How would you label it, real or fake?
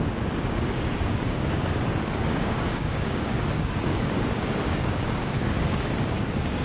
fake